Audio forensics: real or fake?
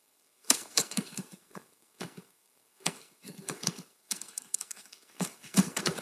fake